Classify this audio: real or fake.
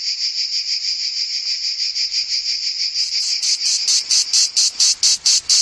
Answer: real